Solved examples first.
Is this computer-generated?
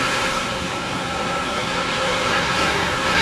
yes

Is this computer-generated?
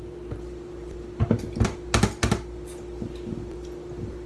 no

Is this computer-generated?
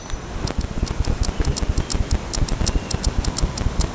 yes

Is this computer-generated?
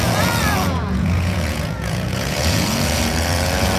yes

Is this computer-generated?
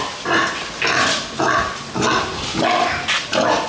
no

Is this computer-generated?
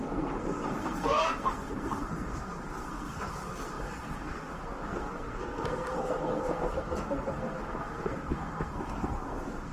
yes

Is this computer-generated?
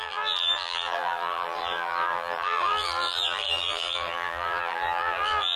yes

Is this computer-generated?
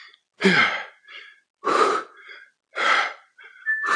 no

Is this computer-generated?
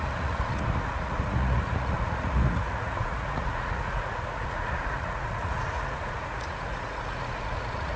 yes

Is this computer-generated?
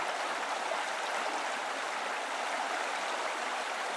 no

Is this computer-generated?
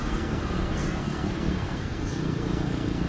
yes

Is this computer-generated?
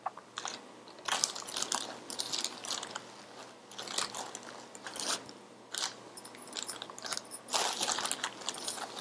no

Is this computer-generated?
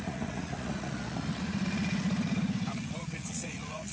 yes